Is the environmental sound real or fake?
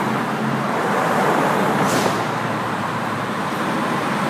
fake